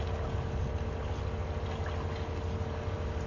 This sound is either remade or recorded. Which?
recorded